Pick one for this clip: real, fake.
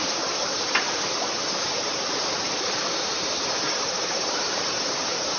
fake